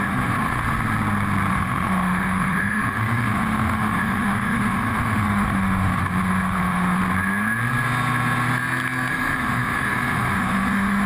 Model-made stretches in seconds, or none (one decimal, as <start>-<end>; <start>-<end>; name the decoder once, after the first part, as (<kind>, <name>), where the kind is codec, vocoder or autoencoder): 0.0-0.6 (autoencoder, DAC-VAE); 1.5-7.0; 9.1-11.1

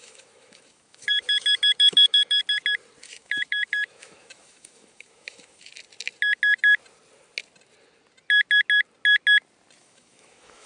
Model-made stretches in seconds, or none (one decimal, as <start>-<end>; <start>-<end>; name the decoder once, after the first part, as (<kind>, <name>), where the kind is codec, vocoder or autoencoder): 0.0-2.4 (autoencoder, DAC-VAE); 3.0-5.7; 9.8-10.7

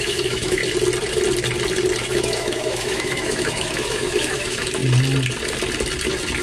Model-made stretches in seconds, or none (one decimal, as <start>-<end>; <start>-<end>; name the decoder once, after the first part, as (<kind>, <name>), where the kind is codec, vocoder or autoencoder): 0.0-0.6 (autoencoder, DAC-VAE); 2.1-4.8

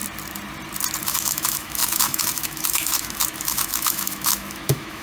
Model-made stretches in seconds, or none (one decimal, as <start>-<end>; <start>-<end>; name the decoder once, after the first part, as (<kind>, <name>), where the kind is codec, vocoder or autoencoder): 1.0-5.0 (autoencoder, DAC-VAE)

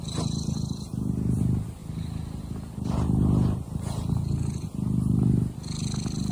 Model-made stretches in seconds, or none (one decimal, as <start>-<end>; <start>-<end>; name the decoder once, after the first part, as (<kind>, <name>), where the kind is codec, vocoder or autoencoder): none

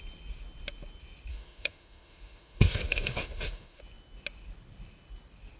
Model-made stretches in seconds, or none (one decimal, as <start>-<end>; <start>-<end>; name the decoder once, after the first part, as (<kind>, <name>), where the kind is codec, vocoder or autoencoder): 1.3-3.8 (autoencoder, DAC-VAE)

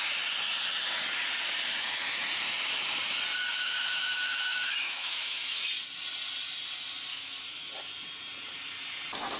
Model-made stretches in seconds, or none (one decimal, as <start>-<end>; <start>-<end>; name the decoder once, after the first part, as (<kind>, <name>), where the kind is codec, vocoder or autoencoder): 3.5-5.7 (autoencoder, DAC-VAE); 7.1-7.7

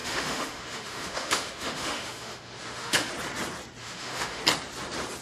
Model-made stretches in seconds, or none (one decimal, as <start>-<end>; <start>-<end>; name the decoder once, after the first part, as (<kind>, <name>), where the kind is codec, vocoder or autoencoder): 0.0-3.1 (autoencoder, DAC-VAE); 3.8-4.4